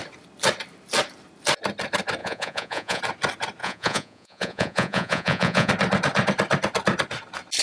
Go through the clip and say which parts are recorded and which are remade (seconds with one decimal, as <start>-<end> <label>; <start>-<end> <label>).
0.0-2.2 recorded; 2.2-3.0 remade; 3.0-3.6 recorded; 3.6-5.7 remade; 5.7-7.6 recorded